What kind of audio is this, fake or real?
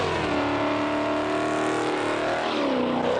real